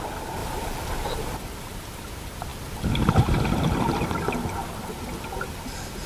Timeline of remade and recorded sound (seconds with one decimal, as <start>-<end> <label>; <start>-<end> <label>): 0.0-0.4 recorded; 0.4-1.0 remade; 1.0-2.5 recorded; 2.5-3.4 remade; 3.4-6.1 recorded